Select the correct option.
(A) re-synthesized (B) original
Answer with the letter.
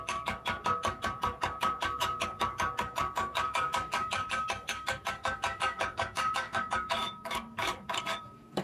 A